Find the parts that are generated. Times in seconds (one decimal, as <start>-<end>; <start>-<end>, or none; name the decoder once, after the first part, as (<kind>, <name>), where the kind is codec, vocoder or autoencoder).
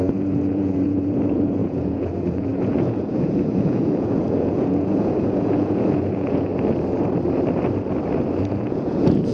0.0-6.5 (vocoder, Vocos); 8.5-9.3